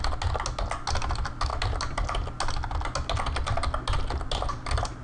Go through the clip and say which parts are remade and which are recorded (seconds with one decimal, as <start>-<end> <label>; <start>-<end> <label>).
0.0-5.0 recorded